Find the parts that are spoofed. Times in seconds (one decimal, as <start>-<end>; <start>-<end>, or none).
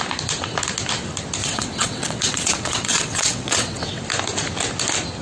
1.4-4.0